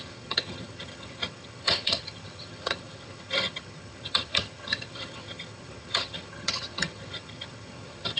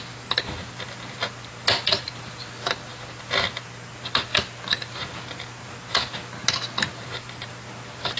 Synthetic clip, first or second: first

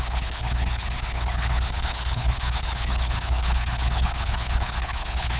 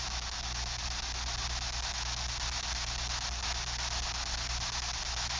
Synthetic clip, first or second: first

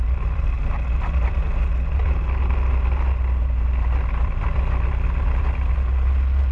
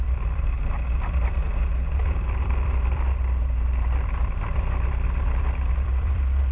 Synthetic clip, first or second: second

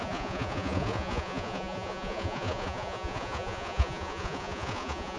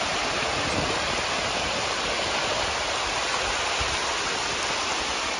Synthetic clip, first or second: first